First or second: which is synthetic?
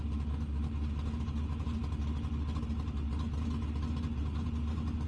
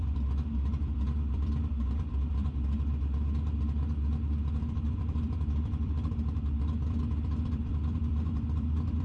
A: second